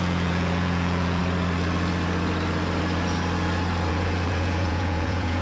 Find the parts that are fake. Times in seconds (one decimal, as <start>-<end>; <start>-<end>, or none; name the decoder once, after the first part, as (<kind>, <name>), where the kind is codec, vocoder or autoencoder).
0.0-1.2 (vocoder, Vocos); 3.9-5.4